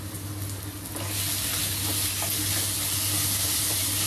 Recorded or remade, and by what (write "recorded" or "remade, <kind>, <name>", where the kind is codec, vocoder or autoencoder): recorded